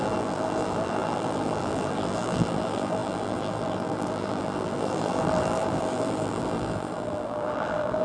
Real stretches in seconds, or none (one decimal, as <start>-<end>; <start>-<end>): none